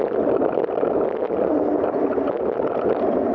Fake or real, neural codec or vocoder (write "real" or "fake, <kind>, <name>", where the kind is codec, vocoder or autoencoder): real